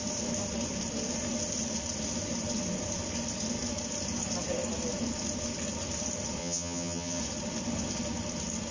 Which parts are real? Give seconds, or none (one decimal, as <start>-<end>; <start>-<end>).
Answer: 0.0-6.4; 7.2-8.7